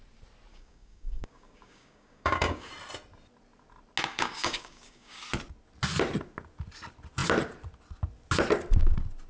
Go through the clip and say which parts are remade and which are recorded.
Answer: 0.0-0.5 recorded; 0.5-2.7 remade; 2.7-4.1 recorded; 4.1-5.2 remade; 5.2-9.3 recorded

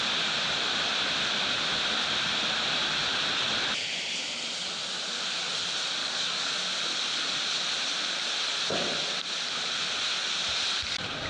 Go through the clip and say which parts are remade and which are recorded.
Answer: 0.0-6.0 recorded; 6.0-6.5 remade; 6.5-11.3 recorded

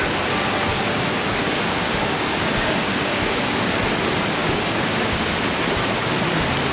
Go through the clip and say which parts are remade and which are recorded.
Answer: 0.0-0.7 recorded; 0.7-3.7 remade; 3.7-4.4 recorded; 4.4-5.3 remade; 5.3-6.7 recorded

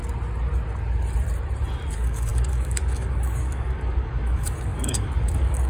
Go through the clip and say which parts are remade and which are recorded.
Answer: 0.0-1.9 recorded; 1.9-5.7 remade

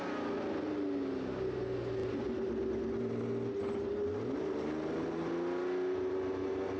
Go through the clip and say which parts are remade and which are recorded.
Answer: 0.0-6.8 recorded

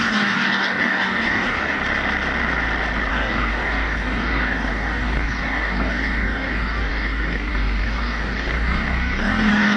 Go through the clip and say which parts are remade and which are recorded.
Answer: 0.0-1.8 remade; 1.8-3.1 recorded; 3.1-9.8 remade

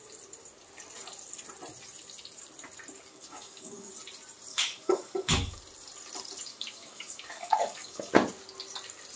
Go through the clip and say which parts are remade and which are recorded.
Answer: 0.0-3.1 recorded; 3.1-3.9 remade; 3.9-4.5 recorded; 4.5-5.6 remade; 5.6-6.5 recorded; 6.5-8.1 remade; 8.1-9.2 recorded

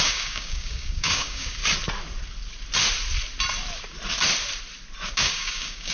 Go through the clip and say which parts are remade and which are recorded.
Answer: 0.0-1.6 remade; 1.6-5.1 recorded; 5.1-5.9 remade